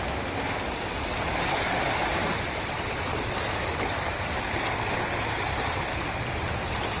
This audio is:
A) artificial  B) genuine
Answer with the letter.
B